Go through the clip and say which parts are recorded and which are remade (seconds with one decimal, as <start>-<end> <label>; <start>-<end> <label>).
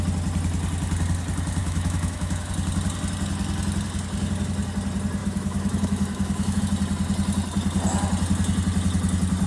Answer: 0.0-1.6 recorded; 1.6-2.5 remade; 2.5-5.2 recorded; 5.2-6.6 remade; 6.6-9.5 recorded